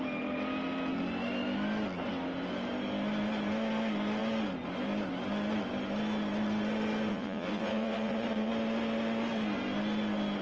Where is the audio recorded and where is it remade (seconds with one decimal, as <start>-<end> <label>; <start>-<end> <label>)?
0.0-7.1 recorded; 7.1-8.5 remade; 8.5-10.4 recorded